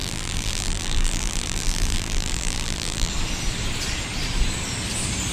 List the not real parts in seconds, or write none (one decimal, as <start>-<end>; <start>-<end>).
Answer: 0.0-3.1